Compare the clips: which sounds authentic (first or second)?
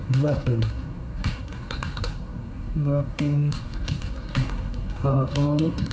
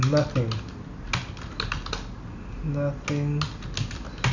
second